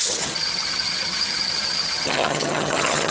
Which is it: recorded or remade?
remade